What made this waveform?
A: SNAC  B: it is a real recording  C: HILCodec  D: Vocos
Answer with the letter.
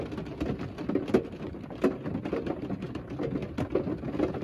B